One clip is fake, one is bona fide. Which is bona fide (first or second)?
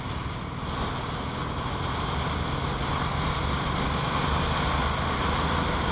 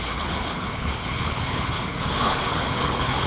first